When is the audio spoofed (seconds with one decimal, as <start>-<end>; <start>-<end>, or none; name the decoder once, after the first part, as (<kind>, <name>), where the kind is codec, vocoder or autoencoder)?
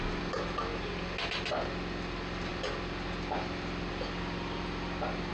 none